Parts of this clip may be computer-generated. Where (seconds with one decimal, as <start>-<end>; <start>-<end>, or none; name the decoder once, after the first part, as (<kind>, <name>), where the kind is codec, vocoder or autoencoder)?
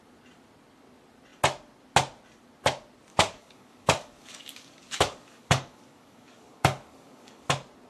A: 3.1-7.5 (codec, DAC)